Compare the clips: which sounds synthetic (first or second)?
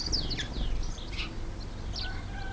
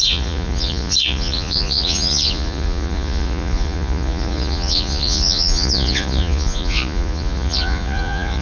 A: second